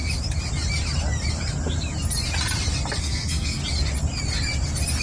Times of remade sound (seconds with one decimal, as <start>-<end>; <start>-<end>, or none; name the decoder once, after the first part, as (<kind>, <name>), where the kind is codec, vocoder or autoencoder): 3.0-3.6 (codec, SNAC)